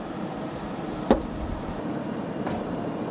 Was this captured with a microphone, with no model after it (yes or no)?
yes